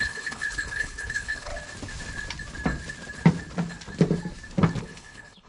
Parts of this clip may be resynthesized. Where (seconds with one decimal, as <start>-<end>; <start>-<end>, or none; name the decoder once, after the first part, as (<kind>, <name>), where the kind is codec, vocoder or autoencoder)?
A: 0.0-1.5 (codec, HILCodec); 4.8-5.5